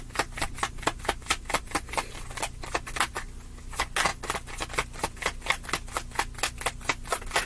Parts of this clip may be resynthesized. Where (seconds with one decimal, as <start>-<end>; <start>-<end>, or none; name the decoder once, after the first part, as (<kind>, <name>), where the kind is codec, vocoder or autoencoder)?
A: none

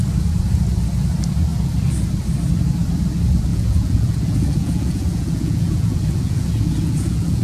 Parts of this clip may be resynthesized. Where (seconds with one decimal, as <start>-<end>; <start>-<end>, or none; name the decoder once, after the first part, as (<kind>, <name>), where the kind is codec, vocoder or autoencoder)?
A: 3.5-7.4 (vocoder, Vocos)

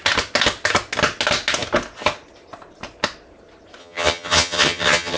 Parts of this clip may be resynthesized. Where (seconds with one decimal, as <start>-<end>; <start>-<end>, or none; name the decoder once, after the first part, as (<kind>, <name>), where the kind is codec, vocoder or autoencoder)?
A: 3.8-5.2 (vocoder, HiFi-GAN)

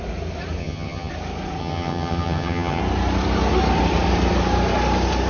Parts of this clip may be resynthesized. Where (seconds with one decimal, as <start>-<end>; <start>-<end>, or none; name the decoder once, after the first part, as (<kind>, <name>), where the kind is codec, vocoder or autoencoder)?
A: 0.6-1.1 (vocoder, HiFi-GAN); 1.6-2.8

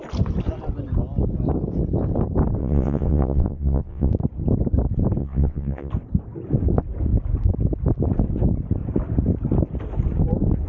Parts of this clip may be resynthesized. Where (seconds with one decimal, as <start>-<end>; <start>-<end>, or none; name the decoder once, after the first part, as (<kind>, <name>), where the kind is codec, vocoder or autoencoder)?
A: 2.6-4.1 (vocoder, WaveNeXt); 5.2-5.9

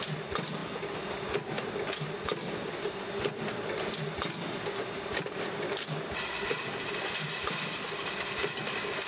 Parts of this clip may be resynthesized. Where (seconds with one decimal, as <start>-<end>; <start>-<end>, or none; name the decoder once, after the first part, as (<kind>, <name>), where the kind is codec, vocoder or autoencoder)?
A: none

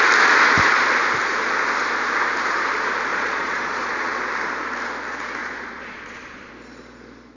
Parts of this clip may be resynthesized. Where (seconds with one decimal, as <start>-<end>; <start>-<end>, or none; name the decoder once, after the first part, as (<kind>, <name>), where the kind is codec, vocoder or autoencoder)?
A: 3.1-4.2 (vocoder, Vocos); 5.4-6.5

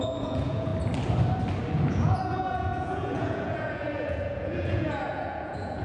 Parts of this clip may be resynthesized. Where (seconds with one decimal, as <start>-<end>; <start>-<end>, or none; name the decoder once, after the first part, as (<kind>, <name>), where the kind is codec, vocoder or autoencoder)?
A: 0.0-0.7 (vocoder, Vocos); 1.7-5.8